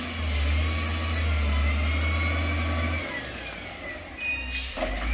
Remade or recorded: recorded